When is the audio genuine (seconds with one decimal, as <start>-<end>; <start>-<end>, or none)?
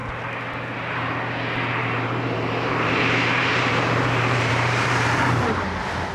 0.0-1.8; 5.5-6.1